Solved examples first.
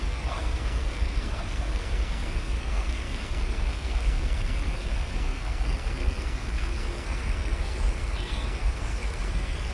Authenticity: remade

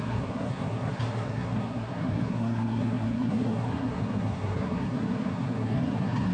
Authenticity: remade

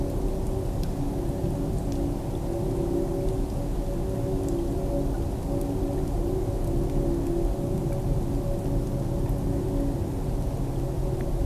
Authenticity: recorded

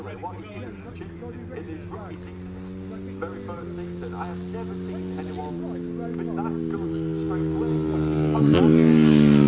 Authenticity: recorded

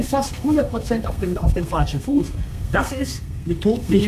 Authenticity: remade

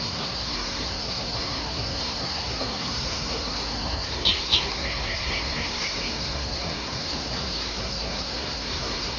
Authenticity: remade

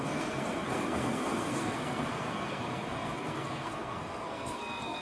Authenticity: remade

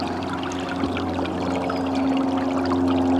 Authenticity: recorded